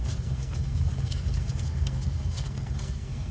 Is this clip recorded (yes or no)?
no